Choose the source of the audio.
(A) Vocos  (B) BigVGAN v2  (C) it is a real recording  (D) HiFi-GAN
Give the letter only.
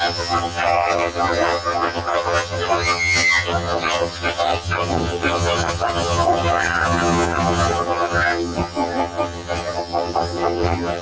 D